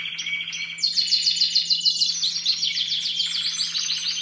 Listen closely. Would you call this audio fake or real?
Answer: real